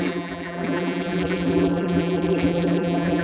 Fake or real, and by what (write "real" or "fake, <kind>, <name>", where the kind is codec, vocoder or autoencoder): fake, vocoder, BigVGAN v2